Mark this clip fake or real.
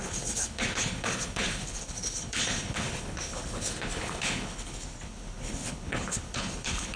fake